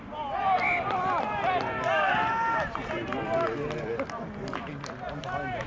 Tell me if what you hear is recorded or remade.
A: recorded